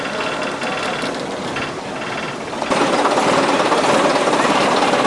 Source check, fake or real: real